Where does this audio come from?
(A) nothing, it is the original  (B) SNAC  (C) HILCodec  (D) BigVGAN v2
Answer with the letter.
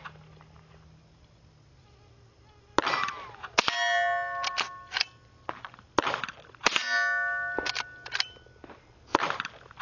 A